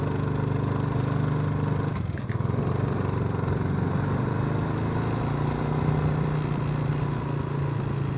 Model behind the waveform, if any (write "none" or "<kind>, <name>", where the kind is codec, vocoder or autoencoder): none